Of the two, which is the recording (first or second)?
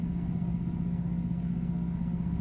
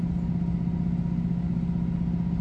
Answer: second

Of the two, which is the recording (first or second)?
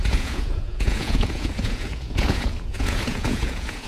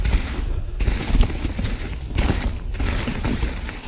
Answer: second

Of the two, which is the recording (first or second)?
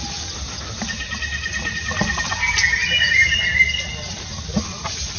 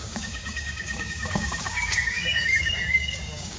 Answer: first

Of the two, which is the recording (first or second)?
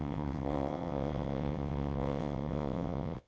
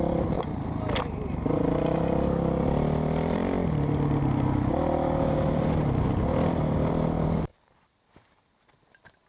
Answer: second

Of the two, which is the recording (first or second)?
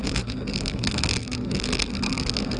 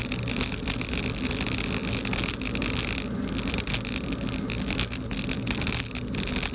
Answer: second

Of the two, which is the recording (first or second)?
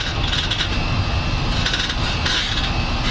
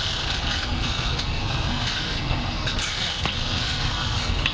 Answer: first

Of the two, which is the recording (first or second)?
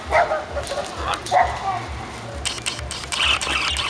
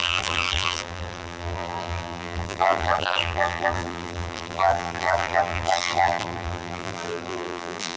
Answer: first